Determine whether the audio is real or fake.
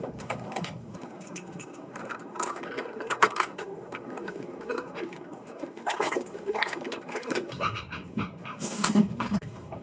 fake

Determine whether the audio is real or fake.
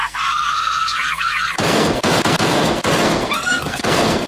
fake